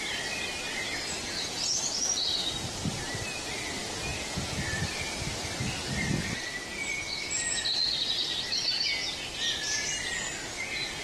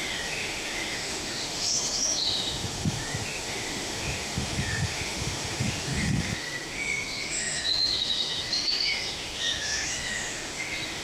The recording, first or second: first